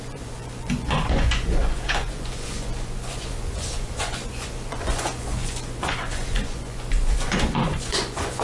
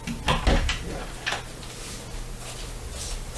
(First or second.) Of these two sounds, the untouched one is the second